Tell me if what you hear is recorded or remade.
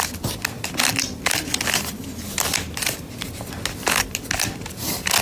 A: recorded